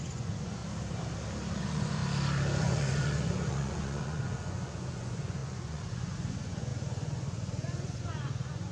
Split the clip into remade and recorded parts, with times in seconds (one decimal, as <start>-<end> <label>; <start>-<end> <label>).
0.0-0.6 remade; 0.6-1.5 recorded; 1.5-2.0 remade; 2.0-2.6 recorded; 2.6-8.7 remade